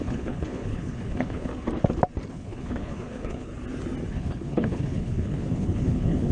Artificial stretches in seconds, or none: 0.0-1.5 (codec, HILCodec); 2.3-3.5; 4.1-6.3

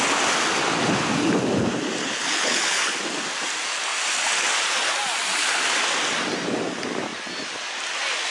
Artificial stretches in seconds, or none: 2.0-2.8 (codec, HILCodec)